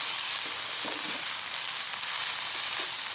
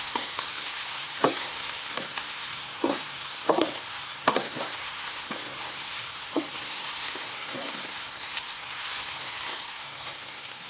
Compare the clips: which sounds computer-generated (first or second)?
second